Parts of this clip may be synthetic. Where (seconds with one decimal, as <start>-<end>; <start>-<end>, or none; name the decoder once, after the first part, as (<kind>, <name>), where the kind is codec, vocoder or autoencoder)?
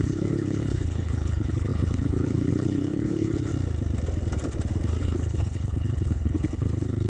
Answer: 0.0-3.5 (codec, HILCodec); 5.0-7.1